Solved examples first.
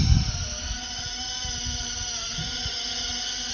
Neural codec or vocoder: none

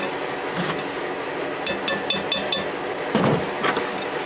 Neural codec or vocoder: none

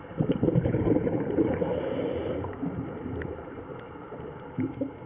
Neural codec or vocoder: vocoder, BigVGAN v2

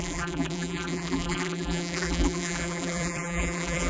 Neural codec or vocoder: vocoder, BigVGAN v2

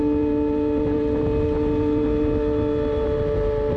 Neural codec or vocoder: none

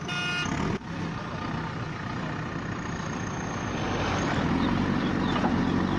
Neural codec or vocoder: none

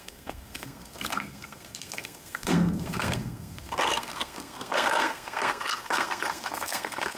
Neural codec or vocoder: codec, SNAC